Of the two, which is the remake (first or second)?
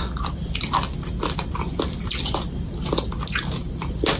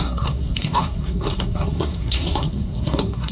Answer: second